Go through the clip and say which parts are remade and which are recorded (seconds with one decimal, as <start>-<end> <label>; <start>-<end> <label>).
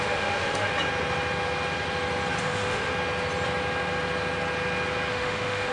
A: 0.0-0.7 remade; 0.7-2.4 recorded; 2.4-2.9 remade; 2.9-5.1 recorded; 5.1-5.7 remade